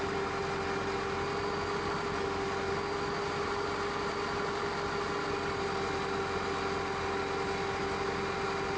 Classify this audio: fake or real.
real